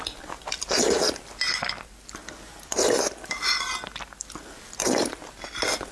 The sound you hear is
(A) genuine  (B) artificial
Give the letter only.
A